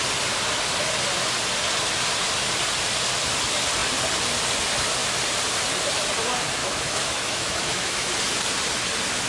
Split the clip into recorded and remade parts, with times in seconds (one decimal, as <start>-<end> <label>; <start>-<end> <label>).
0.0-6.6 recorded; 6.6-8.1 remade; 8.1-9.3 recorded